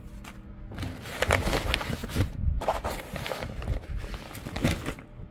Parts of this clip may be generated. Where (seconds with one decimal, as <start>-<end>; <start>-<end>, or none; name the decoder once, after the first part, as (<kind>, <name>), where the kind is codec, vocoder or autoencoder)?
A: 2.0-4.0 (vocoder, BigVGAN v2)